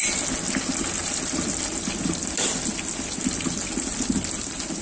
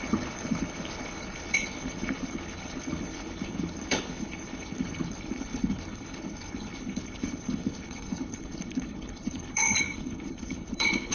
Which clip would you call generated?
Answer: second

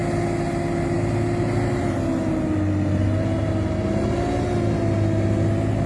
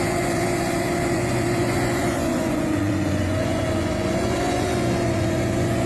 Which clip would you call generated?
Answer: second